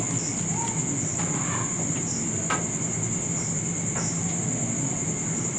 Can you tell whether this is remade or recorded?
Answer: recorded